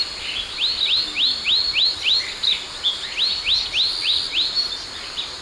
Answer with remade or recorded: recorded